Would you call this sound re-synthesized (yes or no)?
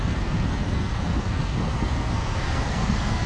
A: yes